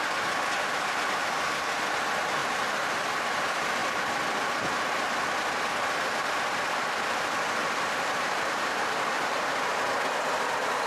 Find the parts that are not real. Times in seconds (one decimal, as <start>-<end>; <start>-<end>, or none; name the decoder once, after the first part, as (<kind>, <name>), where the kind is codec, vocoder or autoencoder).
2.4-3.1 (vocoder, BigVGAN v2); 7.6-9.8